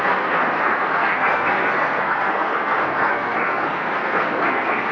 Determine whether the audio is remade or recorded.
remade